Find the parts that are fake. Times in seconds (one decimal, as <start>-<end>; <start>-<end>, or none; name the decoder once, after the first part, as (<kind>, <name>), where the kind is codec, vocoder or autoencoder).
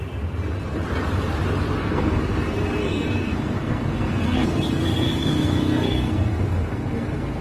1.8-2.4 (codec, SNAC); 2.8-7.4